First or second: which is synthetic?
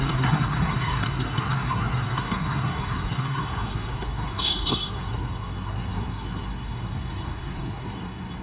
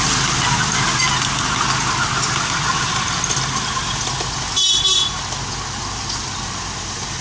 first